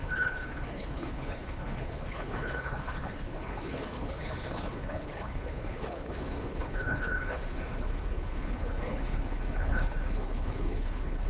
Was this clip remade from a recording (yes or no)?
yes